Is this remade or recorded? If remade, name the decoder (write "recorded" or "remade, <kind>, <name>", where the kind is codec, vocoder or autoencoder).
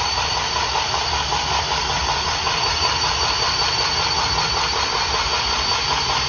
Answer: recorded